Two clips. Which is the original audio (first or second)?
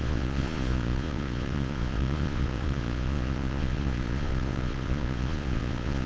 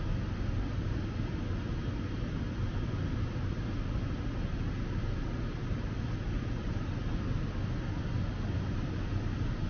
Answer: second